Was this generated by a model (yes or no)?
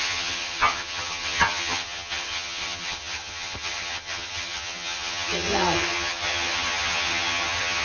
yes